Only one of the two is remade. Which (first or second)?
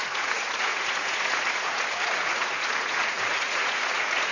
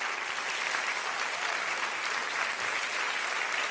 first